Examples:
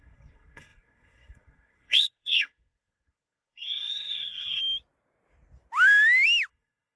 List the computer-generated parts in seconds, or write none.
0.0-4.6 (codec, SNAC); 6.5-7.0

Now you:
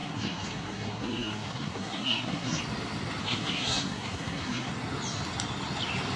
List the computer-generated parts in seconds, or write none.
0.0-2.6 (codec, SNAC); 3.2-4.7

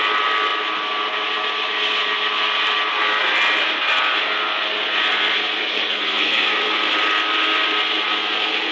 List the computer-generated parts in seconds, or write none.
5.7-6.4 (codec, SNAC)